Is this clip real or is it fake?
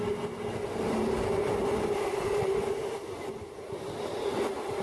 real